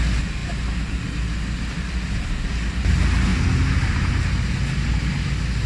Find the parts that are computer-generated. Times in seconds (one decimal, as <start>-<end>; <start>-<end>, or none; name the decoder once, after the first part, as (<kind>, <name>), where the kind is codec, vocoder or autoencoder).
0.4-2.8 (vocoder, BigVGAN v2)